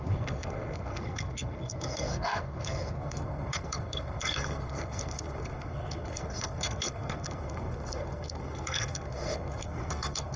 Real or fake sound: fake